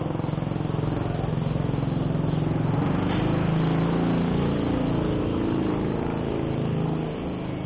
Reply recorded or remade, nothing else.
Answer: recorded